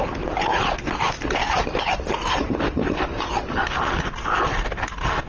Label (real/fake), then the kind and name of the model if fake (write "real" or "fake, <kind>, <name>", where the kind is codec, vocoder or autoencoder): real